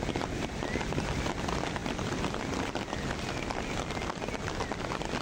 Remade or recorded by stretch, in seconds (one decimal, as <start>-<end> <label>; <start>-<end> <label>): 0.0-5.2 recorded